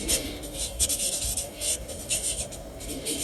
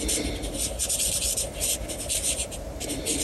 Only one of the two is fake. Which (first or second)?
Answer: first